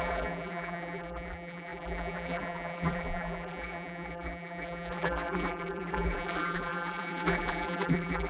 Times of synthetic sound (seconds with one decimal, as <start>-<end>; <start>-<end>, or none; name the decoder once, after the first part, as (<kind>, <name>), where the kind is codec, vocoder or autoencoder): 0.0-8.3 (vocoder, BigVGAN v2)